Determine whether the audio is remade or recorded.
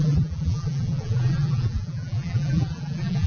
remade